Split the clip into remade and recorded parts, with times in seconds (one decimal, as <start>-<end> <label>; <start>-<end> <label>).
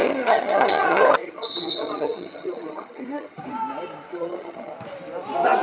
0.0-3.4 remade; 3.4-4.1 recorded; 4.1-4.7 remade; 4.7-5.6 recorded